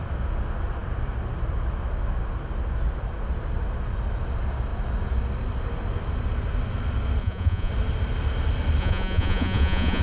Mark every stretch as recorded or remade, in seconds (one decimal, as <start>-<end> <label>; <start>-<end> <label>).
0.0-7.2 recorded; 7.2-7.7 remade; 7.7-8.8 recorded; 8.8-10.0 remade

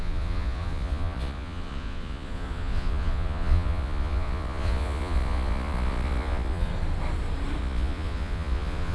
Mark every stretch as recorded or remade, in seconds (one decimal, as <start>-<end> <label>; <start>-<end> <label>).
0.0-6.7 remade; 6.7-7.6 recorded; 7.6-8.9 remade